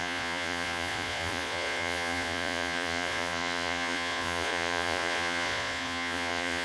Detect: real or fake fake